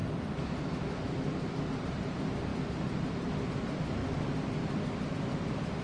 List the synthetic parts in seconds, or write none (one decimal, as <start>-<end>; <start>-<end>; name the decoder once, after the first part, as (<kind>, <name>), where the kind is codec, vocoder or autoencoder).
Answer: 1.8-2.5 (vocoder, BigVGAN v2); 3.4-4.0; 5.1-5.8